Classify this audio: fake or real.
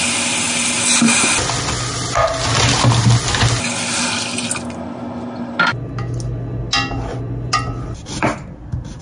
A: real